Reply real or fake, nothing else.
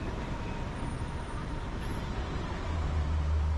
real